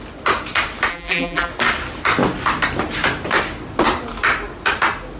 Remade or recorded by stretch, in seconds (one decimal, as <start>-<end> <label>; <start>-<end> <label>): 0.0-0.9 recorded; 0.9-1.5 remade; 1.5-5.2 recorded